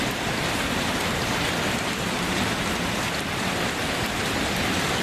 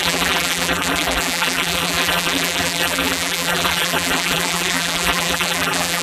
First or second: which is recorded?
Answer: first